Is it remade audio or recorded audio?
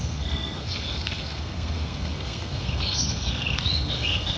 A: remade